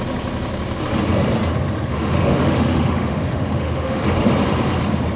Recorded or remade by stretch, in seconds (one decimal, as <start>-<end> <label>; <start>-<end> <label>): 0.0-1.9 recorded; 1.9-4.0 remade; 4.0-5.2 recorded